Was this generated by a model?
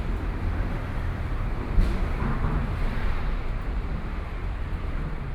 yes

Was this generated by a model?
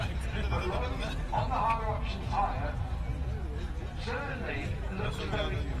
no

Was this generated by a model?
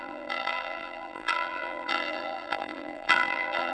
yes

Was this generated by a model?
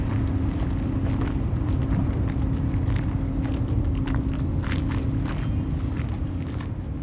no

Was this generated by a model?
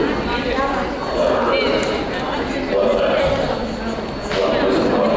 no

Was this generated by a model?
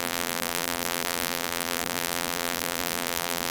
yes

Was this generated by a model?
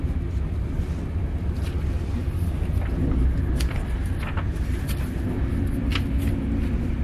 no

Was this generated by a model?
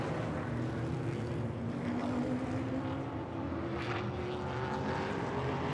no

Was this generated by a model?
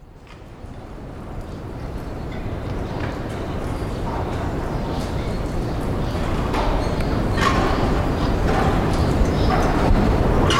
yes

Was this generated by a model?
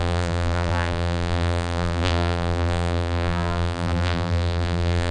yes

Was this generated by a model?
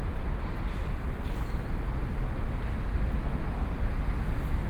no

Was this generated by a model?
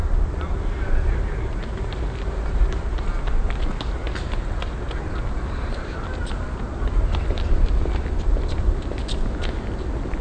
no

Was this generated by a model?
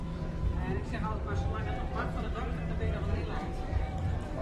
yes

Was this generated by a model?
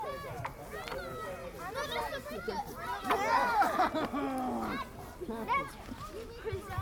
no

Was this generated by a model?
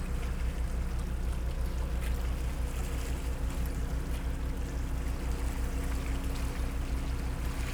no